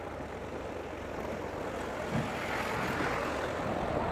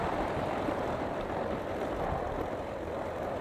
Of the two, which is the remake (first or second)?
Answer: second